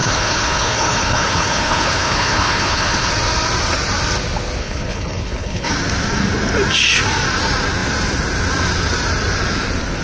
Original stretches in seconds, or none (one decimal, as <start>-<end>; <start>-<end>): 3.1-4.6; 5.7-10.0